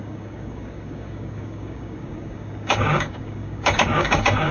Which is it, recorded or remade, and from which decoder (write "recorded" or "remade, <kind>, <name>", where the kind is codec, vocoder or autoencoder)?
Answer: remade, codec, DAC